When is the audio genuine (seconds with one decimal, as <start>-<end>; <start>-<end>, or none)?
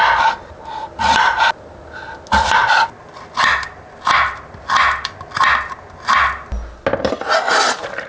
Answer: 0.0-8.1